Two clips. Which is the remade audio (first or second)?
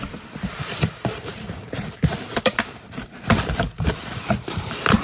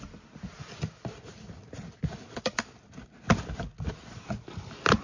first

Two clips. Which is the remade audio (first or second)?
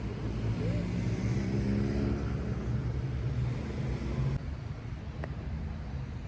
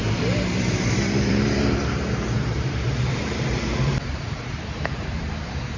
second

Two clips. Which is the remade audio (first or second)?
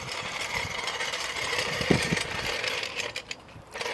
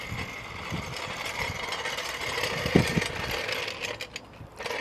first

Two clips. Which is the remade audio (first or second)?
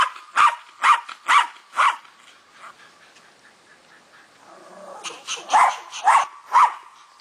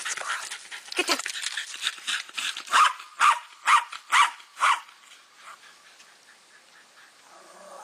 second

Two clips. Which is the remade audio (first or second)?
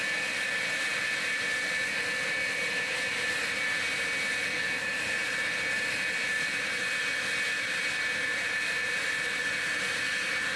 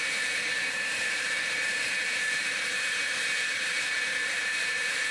second